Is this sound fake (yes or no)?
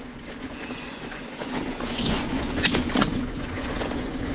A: yes